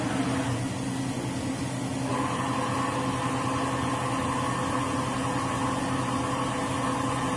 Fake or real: real